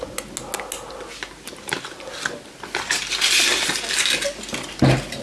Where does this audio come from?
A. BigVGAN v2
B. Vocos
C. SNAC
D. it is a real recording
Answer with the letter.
D